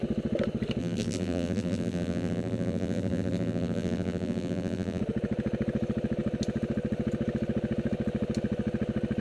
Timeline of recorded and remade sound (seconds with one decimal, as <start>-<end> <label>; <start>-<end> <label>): 0.0-0.8 recorded; 0.8-5.0 remade; 5.0-9.2 recorded